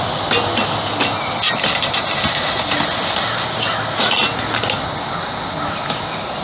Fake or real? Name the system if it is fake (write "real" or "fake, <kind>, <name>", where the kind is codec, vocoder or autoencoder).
real